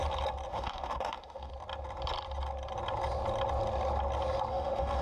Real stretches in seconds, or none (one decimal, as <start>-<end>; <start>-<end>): 0.0-0.5; 1.5-4.5